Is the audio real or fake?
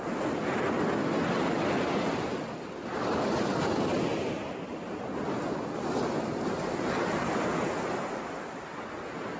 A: real